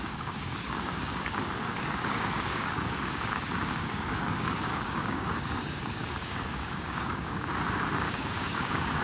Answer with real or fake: fake